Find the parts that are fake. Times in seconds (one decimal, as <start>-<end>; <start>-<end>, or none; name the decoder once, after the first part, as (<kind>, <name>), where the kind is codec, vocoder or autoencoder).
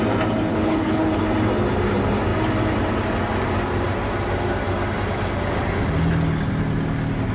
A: 0.5-1.2 (codec, HILCodec)